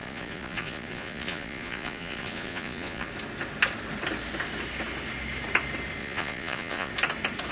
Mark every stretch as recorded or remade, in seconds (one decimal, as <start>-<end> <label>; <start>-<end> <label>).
0.0-3.1 remade; 3.1-6.0 recorded; 6.0-6.9 remade; 6.9-7.5 recorded